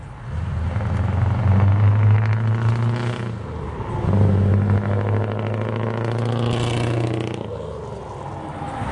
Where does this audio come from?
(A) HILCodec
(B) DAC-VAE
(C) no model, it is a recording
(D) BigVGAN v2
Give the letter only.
C